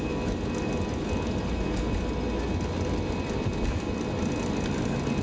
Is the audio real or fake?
real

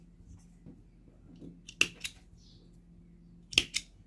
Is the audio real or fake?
real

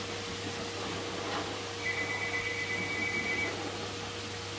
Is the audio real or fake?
real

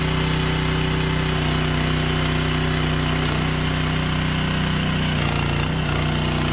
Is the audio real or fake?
real